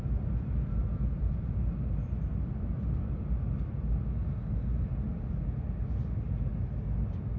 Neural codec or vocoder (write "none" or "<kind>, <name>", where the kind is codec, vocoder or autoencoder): none